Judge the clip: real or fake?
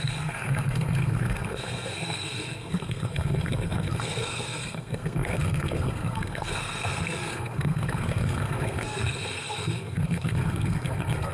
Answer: fake